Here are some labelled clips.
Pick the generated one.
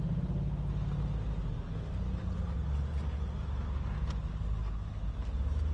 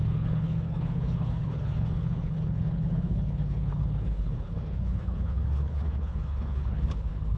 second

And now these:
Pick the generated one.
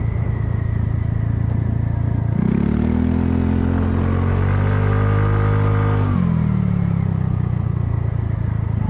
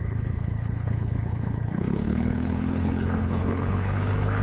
second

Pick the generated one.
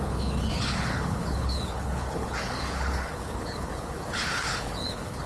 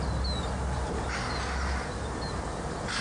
first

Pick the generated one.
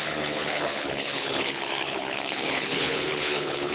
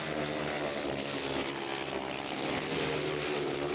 first